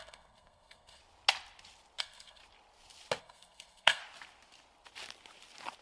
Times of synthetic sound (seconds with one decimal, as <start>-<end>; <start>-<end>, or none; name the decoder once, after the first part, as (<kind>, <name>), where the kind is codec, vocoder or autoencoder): 0.0-1.0 (codec, SNAC); 2.0-2.4; 3.2-4.0